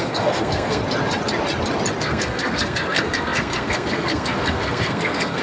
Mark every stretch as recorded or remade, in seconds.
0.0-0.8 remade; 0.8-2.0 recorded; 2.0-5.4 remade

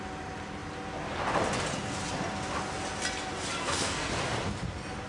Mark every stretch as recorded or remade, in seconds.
0.0-3.6 recorded; 3.6-4.1 remade; 4.1-5.1 recorded

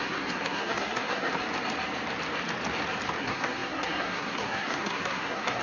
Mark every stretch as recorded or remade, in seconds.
0.0-1.3 remade; 1.3-3.2 recorded; 3.2-5.6 remade

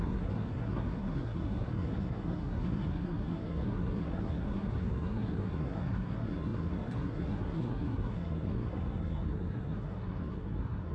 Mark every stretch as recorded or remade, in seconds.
0.0-10.9 remade